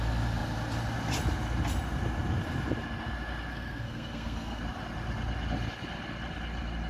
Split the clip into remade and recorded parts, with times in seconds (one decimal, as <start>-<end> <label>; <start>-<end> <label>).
0.0-3.5 recorded; 3.5-4.6 remade; 4.6-6.9 recorded